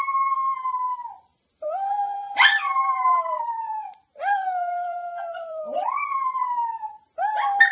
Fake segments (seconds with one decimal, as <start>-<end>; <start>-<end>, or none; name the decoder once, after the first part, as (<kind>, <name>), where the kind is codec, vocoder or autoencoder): 1.0-5.6 (vocoder, BigVGAN v2)